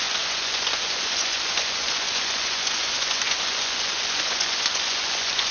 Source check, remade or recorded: remade